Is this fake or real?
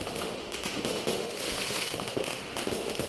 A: fake